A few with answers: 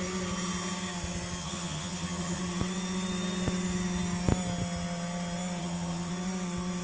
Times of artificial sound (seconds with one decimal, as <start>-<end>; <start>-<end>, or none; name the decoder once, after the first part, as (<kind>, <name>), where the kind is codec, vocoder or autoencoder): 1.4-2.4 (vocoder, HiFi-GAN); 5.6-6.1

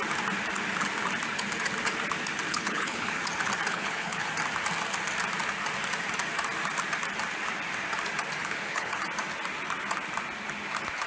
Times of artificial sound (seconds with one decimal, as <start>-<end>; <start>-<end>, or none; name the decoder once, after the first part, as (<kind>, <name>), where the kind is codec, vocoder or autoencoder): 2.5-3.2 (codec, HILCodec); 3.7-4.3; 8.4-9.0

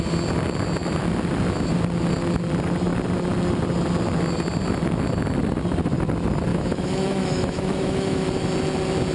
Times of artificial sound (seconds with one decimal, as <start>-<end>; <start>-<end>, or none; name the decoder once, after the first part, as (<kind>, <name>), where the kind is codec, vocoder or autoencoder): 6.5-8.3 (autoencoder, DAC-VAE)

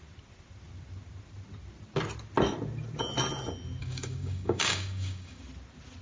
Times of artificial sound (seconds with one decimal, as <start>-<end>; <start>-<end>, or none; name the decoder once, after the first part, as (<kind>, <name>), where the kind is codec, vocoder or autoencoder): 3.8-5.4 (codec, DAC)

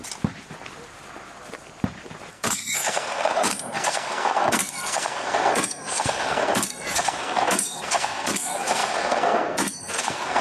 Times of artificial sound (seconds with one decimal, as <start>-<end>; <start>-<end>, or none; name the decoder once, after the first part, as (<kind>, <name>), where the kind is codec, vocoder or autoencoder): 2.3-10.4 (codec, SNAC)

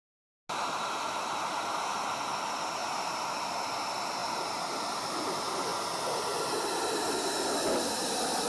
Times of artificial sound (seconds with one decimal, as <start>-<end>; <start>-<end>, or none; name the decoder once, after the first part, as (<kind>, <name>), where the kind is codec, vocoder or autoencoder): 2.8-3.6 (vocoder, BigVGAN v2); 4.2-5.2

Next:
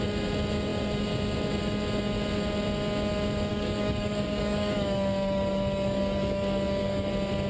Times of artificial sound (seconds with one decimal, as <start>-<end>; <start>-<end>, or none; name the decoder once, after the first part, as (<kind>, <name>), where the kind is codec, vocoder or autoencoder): 3.5-7.1 (codec, DAC)